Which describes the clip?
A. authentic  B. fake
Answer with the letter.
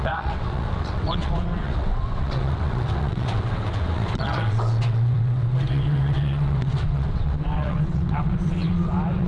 B